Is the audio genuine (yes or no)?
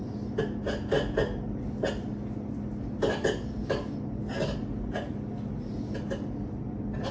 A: yes